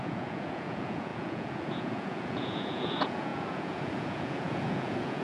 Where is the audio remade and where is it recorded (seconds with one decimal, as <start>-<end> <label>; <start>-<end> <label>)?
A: 0.0-5.2 remade